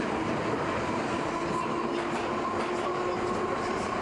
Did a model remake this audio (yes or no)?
no